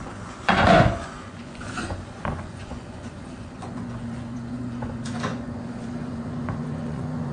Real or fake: fake